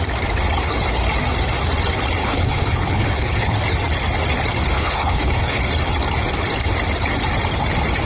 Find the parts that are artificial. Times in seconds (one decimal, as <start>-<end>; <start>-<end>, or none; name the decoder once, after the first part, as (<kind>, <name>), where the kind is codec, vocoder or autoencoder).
2.2-3.6 (codec, HILCodec); 4.7-5.6